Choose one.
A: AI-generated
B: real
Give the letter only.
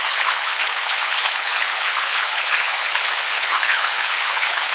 A